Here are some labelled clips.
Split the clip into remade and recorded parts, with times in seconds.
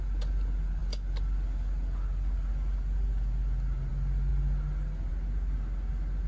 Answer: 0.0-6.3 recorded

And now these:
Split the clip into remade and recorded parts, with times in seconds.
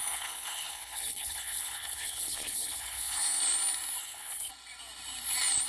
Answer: 0.0-3.4 remade; 3.4-4.0 recorded; 4.0-4.5 remade; 4.5-5.7 recorded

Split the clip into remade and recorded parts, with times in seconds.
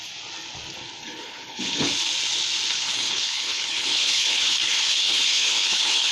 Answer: 0.0-1.0 recorded; 1.0-1.9 remade; 1.9-2.7 recorded; 2.7-6.1 remade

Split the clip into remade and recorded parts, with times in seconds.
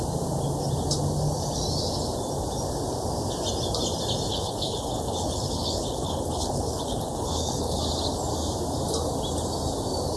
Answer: 0.0-4.3 recorded; 4.3-7.8 remade; 7.8-10.2 recorded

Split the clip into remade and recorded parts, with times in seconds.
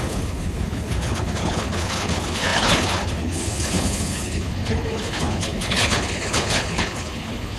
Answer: 0.0-7.6 remade